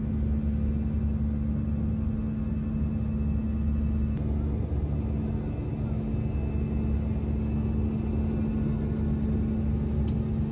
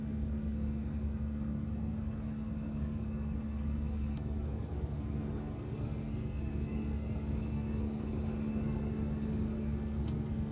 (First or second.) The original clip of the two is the first